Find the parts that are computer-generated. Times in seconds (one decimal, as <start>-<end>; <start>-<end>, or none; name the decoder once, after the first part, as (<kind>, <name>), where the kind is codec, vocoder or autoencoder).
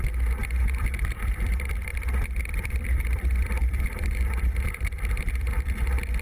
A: 0.4-1.5 (vocoder, BigVGAN v2); 1.9-5.6